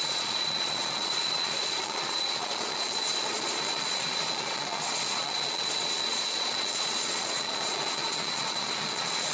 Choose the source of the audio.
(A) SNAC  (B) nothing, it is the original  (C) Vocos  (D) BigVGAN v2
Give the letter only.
C